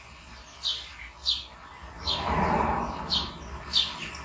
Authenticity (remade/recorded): recorded